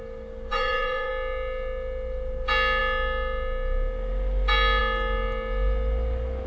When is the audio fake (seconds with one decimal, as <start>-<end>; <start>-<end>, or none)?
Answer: 0.5-1.1